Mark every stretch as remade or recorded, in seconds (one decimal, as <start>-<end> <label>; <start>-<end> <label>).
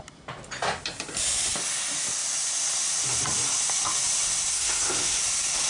0.0-4.5 recorded; 4.5-5.2 remade; 5.2-5.7 recorded